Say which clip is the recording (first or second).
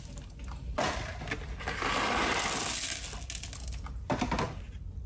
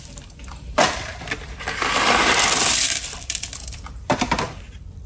first